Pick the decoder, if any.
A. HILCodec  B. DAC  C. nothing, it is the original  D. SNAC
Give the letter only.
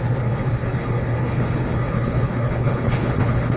A